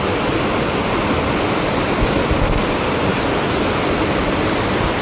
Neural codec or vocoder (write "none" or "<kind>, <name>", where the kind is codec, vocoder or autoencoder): none